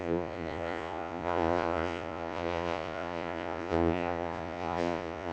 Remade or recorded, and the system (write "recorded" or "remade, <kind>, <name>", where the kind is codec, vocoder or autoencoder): remade, vocoder, Vocos